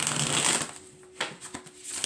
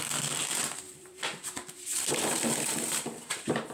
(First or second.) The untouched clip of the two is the first